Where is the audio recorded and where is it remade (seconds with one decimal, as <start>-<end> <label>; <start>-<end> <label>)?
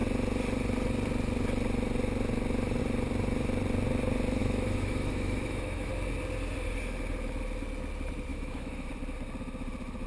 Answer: 0.0-4.4 recorded; 4.4-5.9 remade; 5.9-8.3 recorded; 8.3-8.9 remade; 8.9-10.1 recorded